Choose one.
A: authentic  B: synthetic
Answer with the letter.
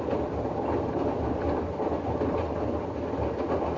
A